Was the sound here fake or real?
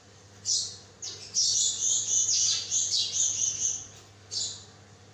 real